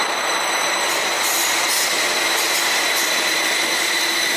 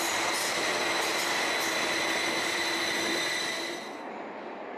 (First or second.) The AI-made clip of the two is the first